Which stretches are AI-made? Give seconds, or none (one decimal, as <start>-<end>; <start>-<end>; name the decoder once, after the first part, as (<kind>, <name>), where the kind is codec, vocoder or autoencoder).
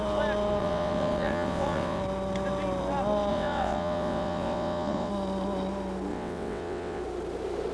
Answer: 0.6-2.0 (vocoder, WaveNeXt); 3.3-5.1; 6.1-7.0